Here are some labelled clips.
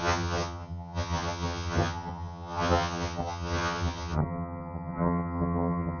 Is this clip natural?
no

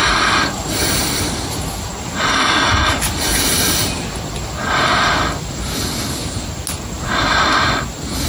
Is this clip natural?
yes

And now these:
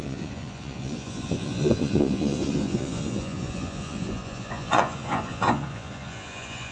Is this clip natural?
no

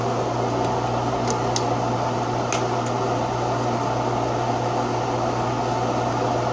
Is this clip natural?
yes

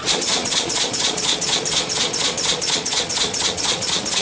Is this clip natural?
no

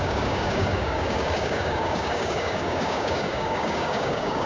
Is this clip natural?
no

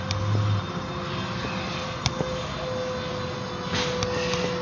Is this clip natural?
yes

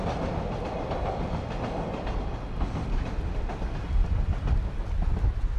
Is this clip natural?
yes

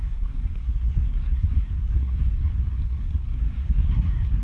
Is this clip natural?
no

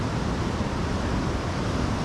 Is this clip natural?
yes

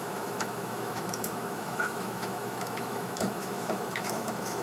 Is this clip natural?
no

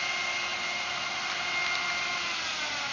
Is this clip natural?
yes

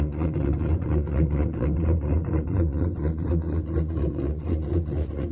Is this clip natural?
no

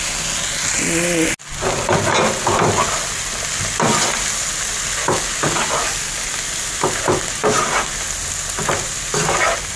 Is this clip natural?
yes